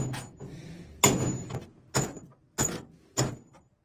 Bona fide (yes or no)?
yes